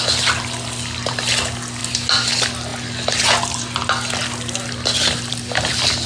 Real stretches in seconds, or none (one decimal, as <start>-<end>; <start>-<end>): 0.0-6.1